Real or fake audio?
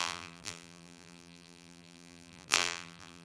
fake